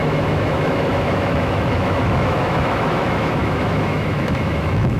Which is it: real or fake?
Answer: fake